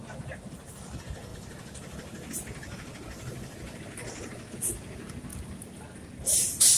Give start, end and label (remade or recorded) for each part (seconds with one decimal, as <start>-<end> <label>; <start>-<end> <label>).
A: 0.0-6.8 recorded